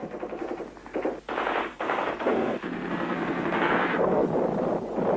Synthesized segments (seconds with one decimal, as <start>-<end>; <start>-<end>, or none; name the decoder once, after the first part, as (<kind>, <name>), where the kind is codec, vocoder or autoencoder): 0.0-0.6 (codec, SNAC); 1.7-4.3